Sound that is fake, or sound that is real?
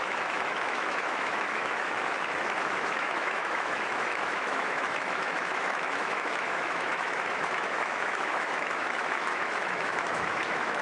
fake